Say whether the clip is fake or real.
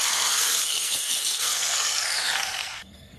fake